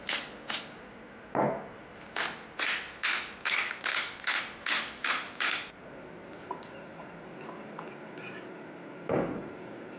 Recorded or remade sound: recorded